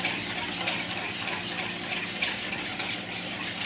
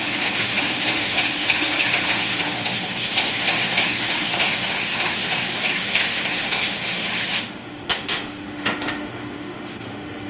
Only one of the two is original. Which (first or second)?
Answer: first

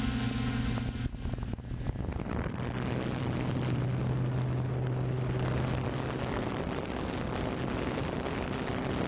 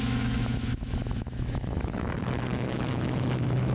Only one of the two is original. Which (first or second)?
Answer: first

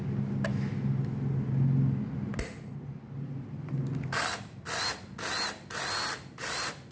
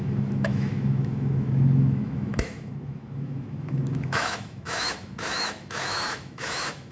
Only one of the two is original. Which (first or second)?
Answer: first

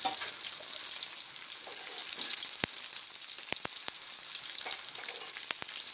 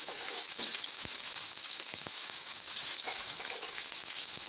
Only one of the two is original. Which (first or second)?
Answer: first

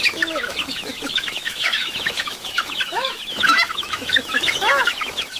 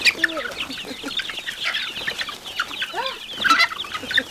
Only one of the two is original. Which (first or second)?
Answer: second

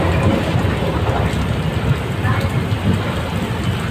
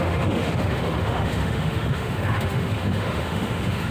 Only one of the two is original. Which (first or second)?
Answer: first